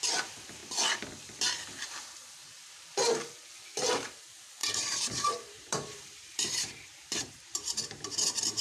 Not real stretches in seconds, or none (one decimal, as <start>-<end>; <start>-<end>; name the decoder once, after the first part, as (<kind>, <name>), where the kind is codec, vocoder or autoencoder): 4.6-8.6 (vocoder, BigVGAN v2)

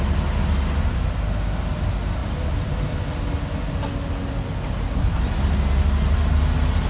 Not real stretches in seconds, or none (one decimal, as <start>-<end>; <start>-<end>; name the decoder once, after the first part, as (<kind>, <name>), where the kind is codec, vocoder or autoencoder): none

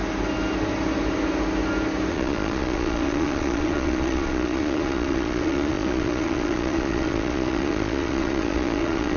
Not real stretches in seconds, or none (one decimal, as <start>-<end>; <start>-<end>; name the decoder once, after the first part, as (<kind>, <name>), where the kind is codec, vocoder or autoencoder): 2.1-9.2 (vocoder, Vocos)

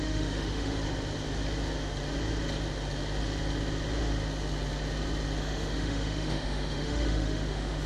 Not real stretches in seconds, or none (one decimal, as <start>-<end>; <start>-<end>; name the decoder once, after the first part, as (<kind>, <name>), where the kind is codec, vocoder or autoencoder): 0.0-0.7 (autoencoder, DAC-VAE); 5.4-7.9

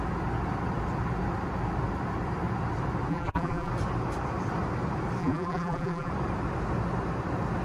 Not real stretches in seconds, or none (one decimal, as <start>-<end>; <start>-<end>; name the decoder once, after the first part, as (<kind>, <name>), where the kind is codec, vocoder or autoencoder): 3.1-3.7 (vocoder, BigVGAN v2); 5.2-6.1